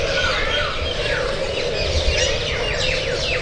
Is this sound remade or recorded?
recorded